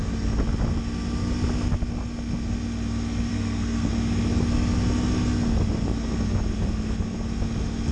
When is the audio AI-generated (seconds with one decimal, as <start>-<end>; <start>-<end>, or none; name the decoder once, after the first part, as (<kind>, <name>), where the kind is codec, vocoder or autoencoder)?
3.3-3.9 (codec, SNAC)